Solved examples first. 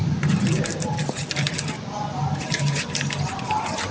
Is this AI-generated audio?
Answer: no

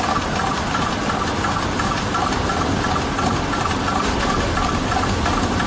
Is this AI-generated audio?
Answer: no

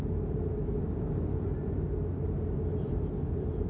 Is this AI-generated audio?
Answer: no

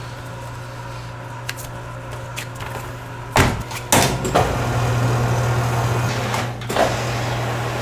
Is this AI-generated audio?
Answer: no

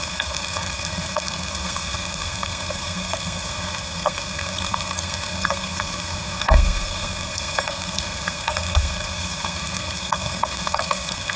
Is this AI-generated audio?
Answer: yes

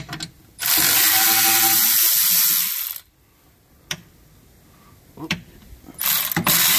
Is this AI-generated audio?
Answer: no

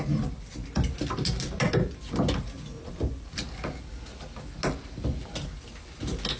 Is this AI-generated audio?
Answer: no